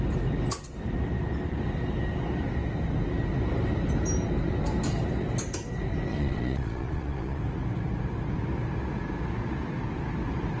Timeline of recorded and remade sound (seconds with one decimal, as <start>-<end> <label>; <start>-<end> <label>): 0.0-6.1 recorded; 6.1-7.4 remade; 7.4-10.6 recorded